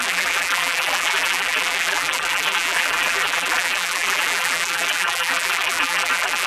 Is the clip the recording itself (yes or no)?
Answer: no